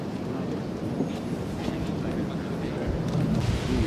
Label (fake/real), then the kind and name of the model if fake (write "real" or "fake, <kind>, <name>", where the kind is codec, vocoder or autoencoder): real